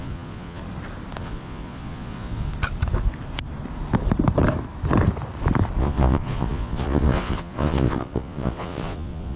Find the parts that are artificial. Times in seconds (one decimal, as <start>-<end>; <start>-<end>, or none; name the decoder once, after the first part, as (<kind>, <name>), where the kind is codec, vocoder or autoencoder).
0.0-0.6 (vocoder, Vocos); 1.2-2.5; 5.8-9.4